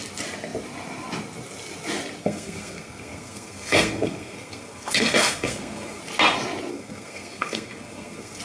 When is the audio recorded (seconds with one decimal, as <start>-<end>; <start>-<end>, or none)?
0.0-2.2; 6.0-6.7